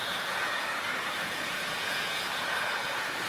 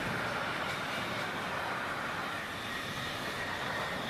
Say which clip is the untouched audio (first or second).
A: second